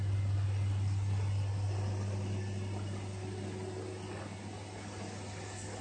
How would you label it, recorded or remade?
recorded